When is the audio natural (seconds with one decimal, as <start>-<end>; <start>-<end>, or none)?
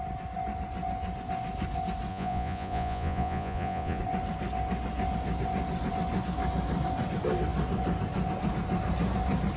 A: 0.0-2.1; 4.0-9.6